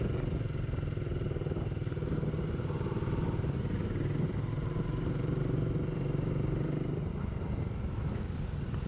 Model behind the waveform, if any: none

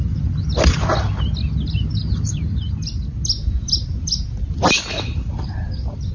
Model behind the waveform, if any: none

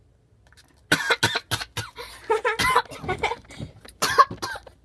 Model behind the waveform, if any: none